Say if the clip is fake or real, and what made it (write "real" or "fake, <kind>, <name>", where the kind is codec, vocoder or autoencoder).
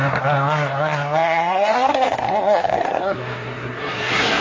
fake, codec, SNAC